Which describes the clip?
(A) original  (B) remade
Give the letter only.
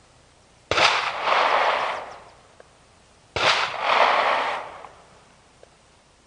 B